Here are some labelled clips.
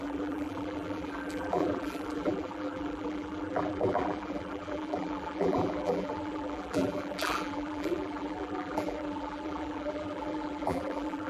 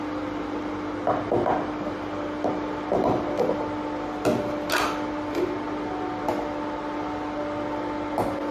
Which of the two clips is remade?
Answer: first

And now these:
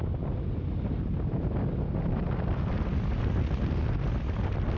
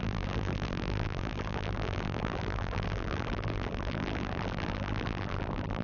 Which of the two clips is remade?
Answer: second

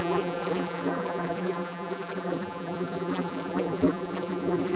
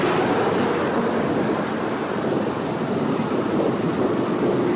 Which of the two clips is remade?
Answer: first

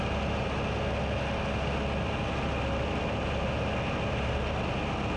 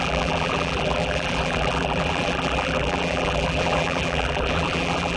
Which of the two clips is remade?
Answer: second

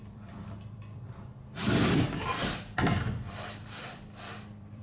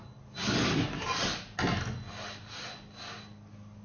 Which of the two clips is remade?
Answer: first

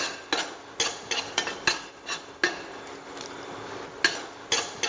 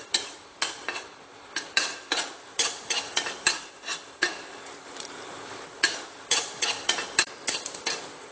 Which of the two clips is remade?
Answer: second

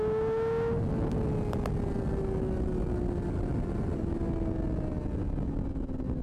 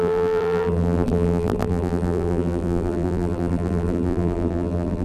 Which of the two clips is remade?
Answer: second